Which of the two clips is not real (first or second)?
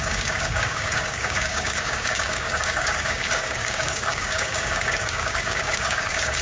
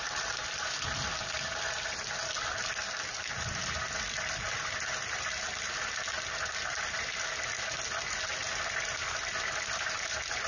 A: first